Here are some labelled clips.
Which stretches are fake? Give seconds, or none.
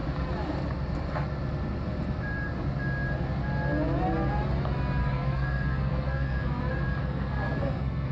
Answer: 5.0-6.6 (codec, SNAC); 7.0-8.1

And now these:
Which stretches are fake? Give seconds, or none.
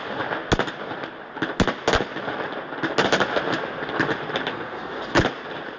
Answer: 4.5-5.0 (codec, SNAC)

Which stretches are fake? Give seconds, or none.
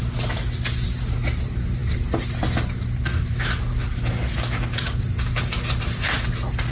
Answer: none